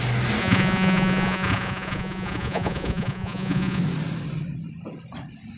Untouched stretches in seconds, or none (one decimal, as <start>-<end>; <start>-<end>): 0.0-0.4; 3.8-5.6